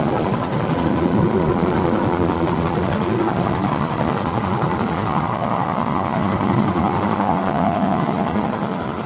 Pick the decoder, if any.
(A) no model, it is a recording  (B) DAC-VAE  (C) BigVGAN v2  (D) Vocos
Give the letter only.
D